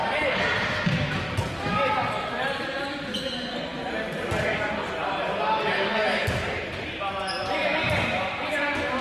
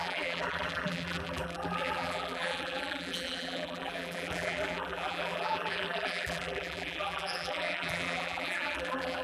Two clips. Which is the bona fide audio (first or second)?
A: first